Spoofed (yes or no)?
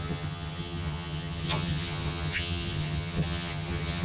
yes